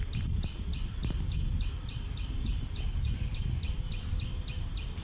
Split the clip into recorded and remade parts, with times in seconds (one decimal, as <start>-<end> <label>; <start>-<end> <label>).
0.0-5.0 recorded